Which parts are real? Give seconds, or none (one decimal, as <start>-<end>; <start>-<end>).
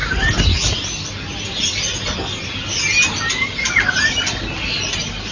0.0-5.3